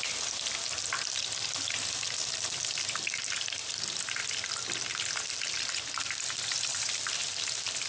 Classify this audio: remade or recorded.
recorded